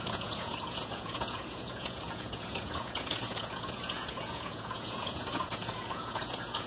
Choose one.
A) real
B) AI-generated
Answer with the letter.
B